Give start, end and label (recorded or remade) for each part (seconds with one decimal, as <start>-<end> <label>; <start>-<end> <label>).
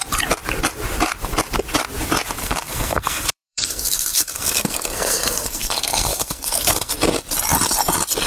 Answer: 0.0-2.4 recorded; 2.4-6.9 remade; 6.9-8.3 recorded